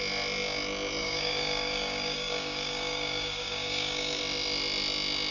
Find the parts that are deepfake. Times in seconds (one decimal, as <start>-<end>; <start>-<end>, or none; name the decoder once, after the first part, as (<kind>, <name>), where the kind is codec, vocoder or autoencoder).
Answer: 1.0-4.2 (codec, DAC)